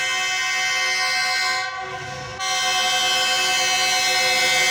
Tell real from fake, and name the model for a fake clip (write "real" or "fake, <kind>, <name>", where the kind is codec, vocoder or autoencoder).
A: real